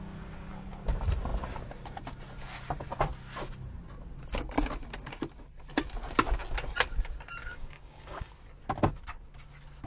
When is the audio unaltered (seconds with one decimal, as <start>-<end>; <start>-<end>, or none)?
0.0-7.4; 8.3-9.9